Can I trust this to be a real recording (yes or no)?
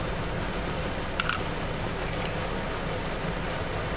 yes